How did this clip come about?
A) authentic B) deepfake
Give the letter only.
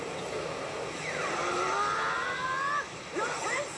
A